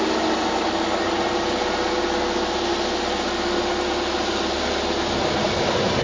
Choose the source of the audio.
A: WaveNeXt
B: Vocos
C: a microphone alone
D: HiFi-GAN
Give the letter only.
C